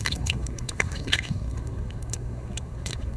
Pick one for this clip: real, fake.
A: fake